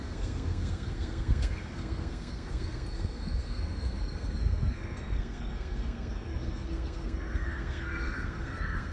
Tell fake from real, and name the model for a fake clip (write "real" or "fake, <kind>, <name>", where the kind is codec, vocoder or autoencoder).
fake, codec, SNAC